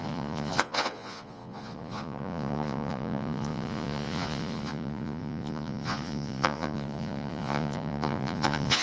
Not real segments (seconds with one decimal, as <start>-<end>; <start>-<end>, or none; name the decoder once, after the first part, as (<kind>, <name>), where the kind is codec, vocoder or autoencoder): 0.0-8.8 (vocoder, Vocos)